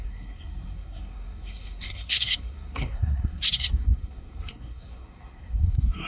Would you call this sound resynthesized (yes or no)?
yes